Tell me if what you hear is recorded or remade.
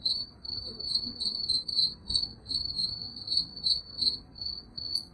remade